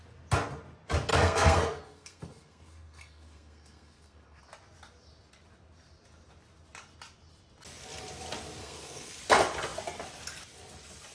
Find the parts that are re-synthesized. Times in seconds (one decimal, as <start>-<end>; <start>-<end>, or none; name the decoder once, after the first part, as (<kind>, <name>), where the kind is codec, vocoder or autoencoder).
1.1-4.4 (codec, SNAC); 8.6-9.2